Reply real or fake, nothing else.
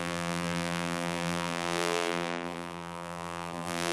fake